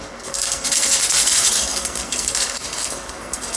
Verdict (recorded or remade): remade